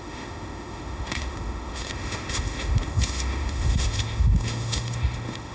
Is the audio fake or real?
fake